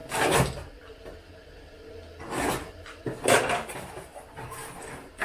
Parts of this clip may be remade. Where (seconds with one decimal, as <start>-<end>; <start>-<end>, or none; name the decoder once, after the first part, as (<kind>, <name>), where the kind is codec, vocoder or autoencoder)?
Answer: none